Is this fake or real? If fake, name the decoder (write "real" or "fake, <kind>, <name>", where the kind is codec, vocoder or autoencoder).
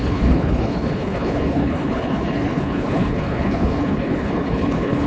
fake, codec, HILCodec